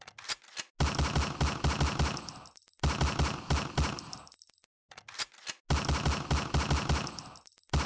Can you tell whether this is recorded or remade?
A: recorded